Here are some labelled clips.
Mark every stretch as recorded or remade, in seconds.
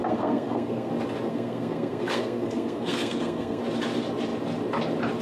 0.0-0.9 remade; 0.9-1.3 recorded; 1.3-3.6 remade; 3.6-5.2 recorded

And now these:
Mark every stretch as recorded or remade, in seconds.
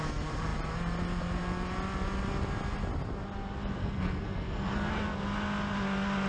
0.0-3.8 recorded; 3.8-4.9 remade; 4.9-6.3 recorded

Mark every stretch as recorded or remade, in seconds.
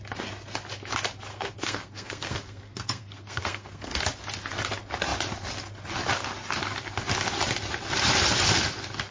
0.0-1.3 recorded; 1.3-4.0 remade; 4.0-9.1 recorded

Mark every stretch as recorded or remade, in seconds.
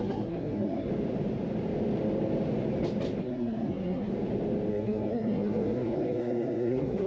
0.0-0.9 remade; 0.9-3.2 recorded; 3.2-4.1 remade; 4.1-4.7 recorded; 4.7-7.1 remade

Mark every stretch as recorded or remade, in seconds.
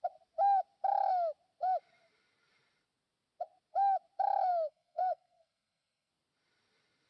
0.0-4.5 recorded; 4.5-6.1 remade; 6.1-7.1 recorded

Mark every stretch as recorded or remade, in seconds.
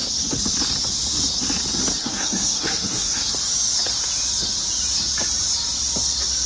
0.0-2.0 recorded; 2.0-3.3 remade; 3.3-6.5 recorded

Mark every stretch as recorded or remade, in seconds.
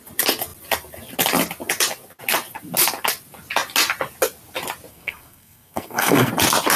0.0-4.9 recorded; 4.9-6.3 remade; 6.3-6.8 recorded